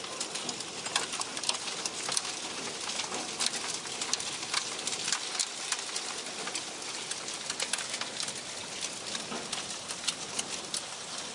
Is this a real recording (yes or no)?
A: yes